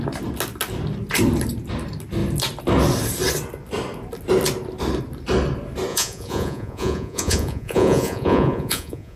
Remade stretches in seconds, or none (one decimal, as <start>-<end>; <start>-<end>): 5.9-9.2